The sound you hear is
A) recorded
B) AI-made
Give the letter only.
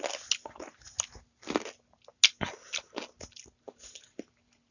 A